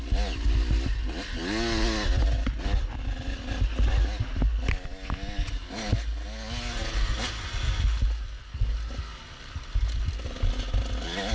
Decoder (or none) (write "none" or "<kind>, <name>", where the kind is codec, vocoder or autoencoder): none